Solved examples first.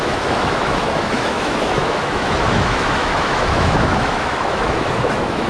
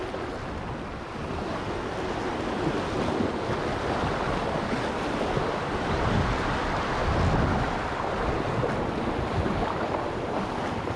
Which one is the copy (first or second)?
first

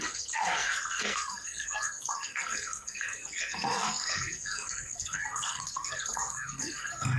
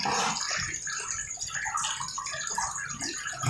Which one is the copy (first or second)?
first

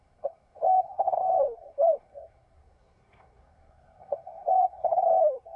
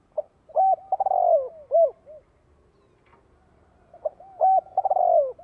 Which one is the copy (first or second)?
first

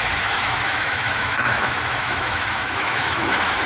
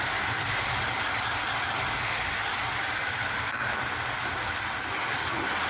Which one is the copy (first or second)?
first